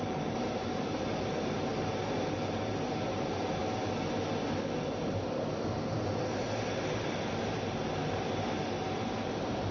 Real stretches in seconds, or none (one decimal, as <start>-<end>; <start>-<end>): 1.7-3.2; 3.6-7.2